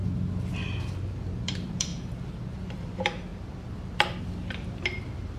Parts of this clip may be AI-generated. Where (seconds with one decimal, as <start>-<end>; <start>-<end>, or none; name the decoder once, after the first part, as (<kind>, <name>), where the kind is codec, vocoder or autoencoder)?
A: 1.1-1.9 (vocoder, BigVGAN v2); 2.5-5.4